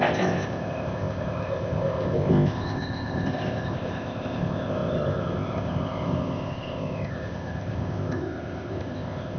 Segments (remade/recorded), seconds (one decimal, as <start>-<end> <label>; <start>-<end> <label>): 0.0-9.4 remade